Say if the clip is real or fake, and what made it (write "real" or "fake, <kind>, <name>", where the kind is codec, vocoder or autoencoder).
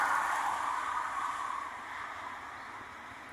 real